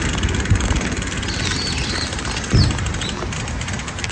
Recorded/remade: recorded